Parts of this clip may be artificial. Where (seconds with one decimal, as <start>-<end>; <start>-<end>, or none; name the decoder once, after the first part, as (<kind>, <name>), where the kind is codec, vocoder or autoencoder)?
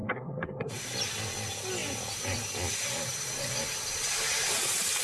0.0-0.7 (codec, SNAC)